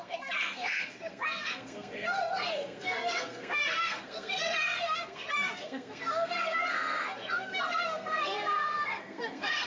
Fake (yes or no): yes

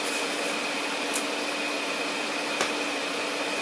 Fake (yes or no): no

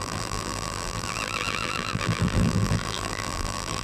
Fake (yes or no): yes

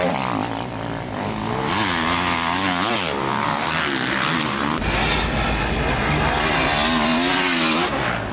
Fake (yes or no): no